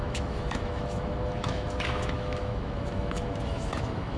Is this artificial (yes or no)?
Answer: yes